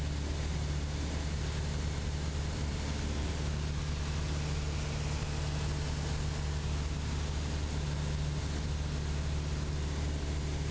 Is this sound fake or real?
real